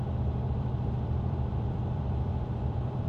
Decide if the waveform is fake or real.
fake